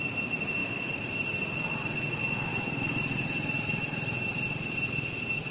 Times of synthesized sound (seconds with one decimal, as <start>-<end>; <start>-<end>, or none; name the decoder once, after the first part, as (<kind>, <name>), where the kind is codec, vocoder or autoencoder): 0.6-1.3 (vocoder, BigVGAN v2); 2.5-5.5